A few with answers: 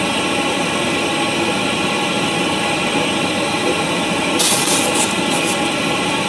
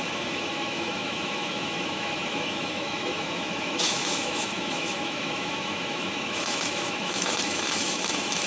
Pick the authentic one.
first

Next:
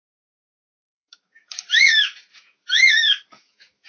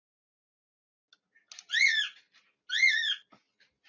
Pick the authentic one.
second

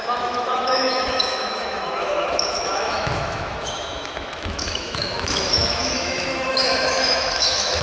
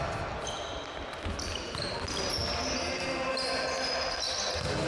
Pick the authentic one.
second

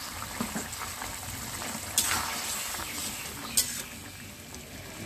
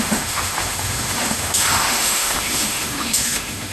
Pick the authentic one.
first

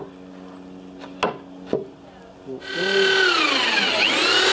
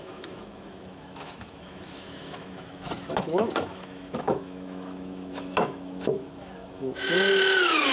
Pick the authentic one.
first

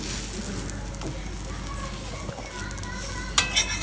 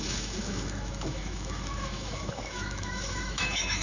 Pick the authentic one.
first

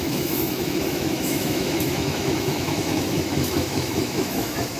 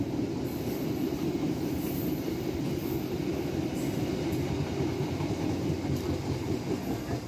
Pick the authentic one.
second